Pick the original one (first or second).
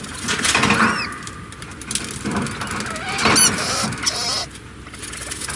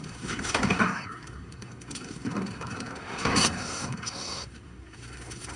first